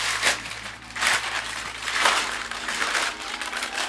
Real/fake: fake